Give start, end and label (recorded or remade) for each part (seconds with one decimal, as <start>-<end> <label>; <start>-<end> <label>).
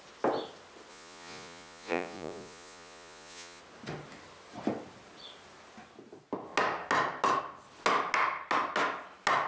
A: 0.0-0.9 recorded; 0.9-3.6 remade; 3.6-9.5 recorded